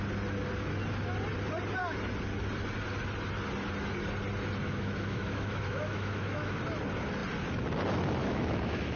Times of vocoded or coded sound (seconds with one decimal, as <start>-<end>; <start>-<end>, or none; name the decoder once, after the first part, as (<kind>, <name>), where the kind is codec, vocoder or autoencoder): 4.6-6.6 (autoencoder, DAC-VAE); 8.2-9.0